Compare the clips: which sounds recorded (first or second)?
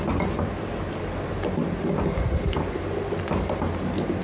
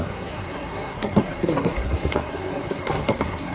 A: first